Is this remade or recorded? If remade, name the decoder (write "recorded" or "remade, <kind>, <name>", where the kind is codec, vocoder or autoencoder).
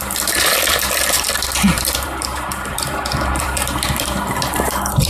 remade, vocoder, BigVGAN v2